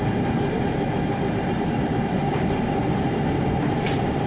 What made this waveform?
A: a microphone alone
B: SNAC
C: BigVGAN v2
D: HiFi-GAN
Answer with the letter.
C